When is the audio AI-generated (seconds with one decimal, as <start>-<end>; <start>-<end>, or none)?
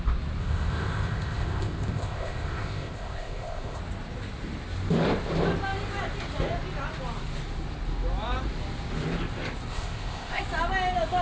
0.4-3.8; 9.7-10.4